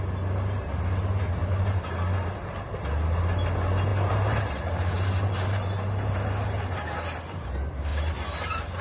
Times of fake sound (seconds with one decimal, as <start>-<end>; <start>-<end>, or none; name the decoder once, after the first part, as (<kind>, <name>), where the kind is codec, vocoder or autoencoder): 3.9-6.3 (vocoder, BigVGAN v2); 7.9-8.8